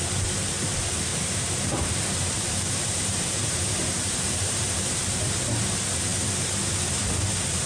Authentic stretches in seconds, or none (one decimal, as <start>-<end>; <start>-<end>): 0.0-1.1; 5.3-7.7